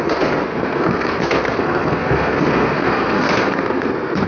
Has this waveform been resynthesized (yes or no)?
yes